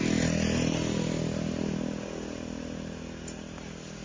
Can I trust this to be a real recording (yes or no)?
yes